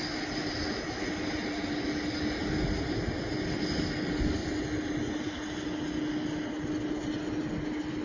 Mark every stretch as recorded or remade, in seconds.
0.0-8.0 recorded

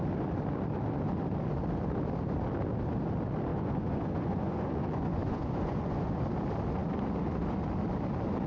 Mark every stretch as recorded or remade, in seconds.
0.0-3.5 recorded; 3.5-6.2 remade; 6.2-8.5 recorded

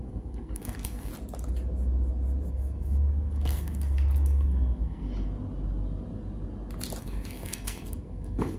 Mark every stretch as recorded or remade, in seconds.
0.0-1.1 remade; 1.1-2.5 recorded; 2.5-5.1 remade; 5.1-7.0 recorded; 7.0-8.6 remade